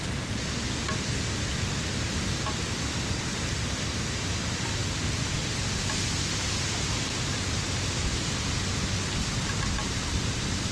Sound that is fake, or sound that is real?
real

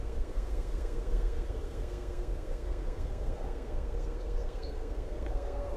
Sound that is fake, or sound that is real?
fake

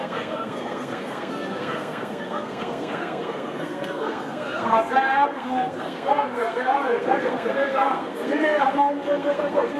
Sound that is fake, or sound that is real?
fake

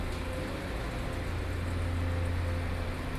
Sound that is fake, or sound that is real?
real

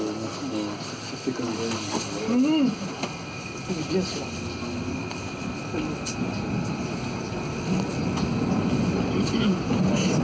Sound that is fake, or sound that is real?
real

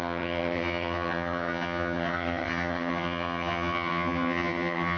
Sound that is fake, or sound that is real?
fake